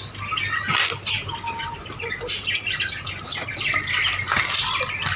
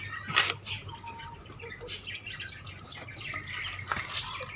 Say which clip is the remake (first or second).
second